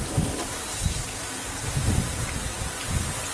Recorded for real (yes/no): yes